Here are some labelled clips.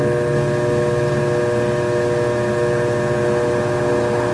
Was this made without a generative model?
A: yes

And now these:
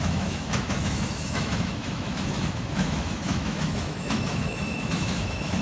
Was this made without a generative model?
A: no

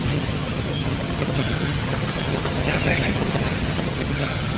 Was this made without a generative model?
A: no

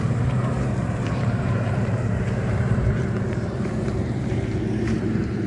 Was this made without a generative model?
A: no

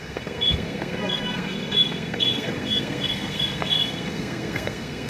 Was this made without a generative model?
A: no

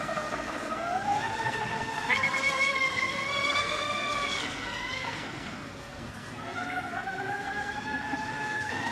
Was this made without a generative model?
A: no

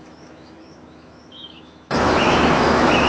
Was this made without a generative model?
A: no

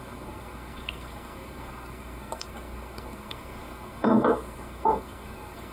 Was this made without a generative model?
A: no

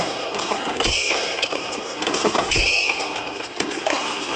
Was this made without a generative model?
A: no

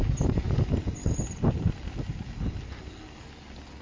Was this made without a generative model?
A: yes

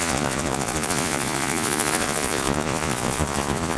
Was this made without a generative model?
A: no